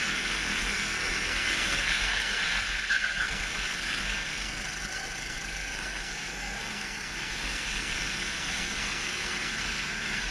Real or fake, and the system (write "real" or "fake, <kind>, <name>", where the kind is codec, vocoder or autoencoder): fake, codec, SNAC